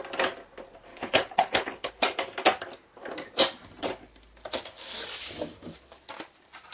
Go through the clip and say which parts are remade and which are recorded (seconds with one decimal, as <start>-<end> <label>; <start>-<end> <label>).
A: 0.0-0.9 recorded; 0.9-1.9 remade; 1.9-6.7 recorded